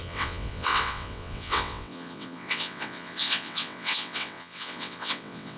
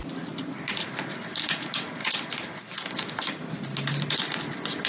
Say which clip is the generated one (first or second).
first